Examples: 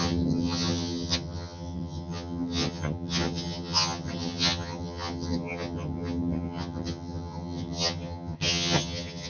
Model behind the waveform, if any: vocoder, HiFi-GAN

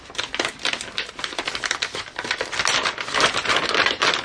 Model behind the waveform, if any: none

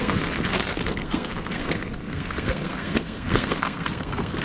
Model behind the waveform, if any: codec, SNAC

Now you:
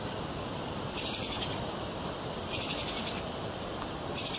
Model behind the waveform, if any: none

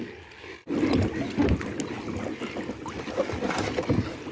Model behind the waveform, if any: none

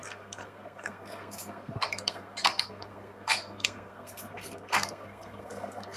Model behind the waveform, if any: codec, SNAC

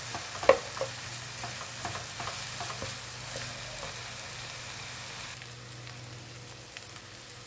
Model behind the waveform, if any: none